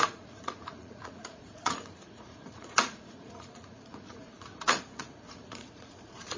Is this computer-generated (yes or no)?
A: yes